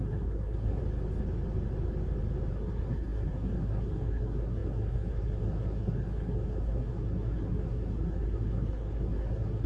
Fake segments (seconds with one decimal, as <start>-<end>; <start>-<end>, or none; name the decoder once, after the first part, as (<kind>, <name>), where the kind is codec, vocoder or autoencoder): 0.0-0.8 (codec, SNAC); 2.5-9.7